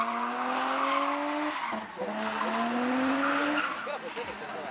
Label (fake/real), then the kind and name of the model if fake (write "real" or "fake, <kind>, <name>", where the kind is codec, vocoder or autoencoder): real